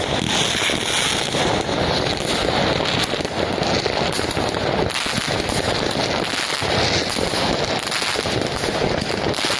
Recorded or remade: recorded